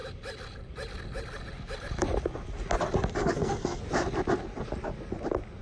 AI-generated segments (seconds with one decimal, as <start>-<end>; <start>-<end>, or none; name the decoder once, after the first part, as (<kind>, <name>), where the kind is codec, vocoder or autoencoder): 3.2-3.8 (codec, SNAC)